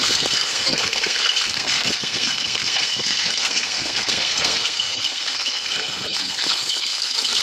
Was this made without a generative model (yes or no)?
no